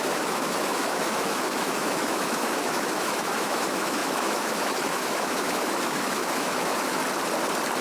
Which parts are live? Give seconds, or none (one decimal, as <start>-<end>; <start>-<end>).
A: 7.0-7.8